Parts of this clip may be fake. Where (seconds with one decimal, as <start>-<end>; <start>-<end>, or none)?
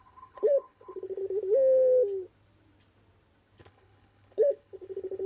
0.0-1.2; 3.6-5.3